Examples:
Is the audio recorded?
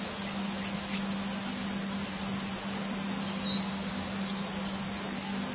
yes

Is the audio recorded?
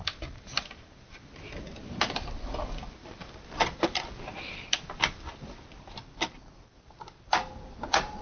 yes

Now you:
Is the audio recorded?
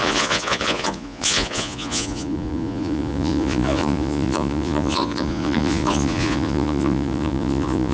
no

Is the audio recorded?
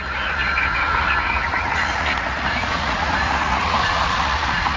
no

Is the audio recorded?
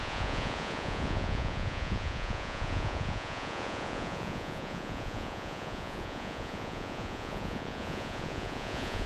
no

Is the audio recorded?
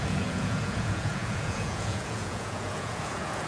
no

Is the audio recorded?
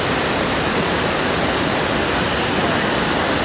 yes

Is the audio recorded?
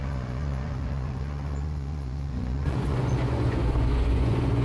no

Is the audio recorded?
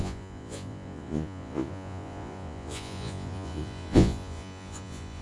no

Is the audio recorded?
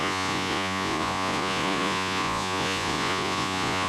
no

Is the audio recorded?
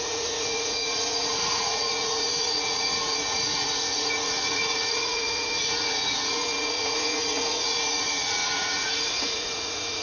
no